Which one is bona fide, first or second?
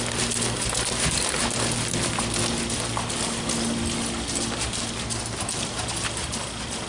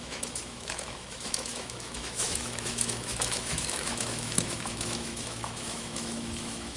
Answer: first